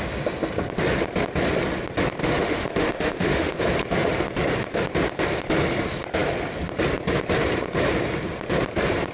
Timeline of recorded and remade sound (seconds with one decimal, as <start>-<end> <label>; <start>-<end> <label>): 0.0-2.2 recorded; 2.2-3.6 remade; 3.6-9.1 recorded